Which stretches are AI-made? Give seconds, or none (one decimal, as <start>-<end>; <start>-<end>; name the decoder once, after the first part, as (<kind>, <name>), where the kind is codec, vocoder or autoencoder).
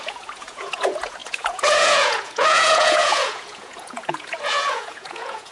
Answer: 0.0-5.5 (vocoder, Vocos)